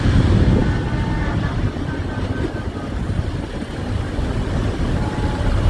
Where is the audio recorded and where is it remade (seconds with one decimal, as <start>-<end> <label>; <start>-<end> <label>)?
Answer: 0.0-5.7 recorded